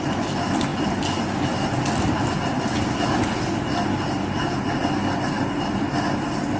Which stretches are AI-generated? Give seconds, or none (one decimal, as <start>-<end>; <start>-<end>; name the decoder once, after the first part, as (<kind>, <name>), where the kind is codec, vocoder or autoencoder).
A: none